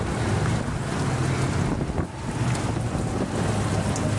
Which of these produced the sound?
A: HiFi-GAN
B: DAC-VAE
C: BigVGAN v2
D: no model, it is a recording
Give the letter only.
D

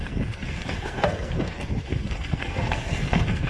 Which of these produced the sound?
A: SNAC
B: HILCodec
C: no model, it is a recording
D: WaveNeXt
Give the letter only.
A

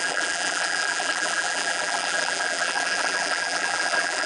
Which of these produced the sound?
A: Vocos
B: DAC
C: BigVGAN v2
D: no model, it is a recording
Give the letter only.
C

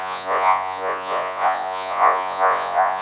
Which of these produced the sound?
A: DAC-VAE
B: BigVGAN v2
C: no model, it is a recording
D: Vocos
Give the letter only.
D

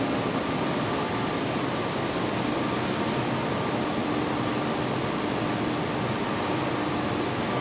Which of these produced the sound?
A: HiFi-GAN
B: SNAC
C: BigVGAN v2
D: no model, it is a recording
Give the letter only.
D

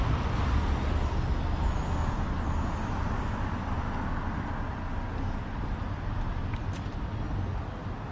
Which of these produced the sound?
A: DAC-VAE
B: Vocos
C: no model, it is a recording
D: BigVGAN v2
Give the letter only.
C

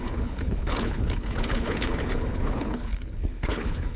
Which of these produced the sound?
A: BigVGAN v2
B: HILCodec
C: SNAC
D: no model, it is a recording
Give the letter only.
B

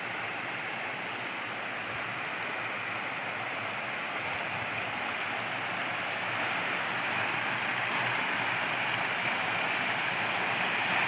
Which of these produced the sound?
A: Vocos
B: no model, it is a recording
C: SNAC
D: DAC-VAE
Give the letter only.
B